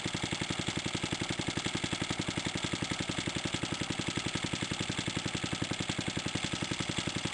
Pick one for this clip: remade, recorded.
recorded